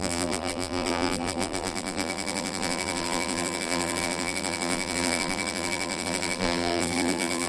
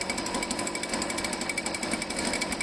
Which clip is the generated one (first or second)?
first